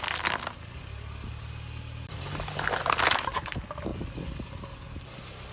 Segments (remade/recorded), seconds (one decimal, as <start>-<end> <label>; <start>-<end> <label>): 0.0-5.5 recorded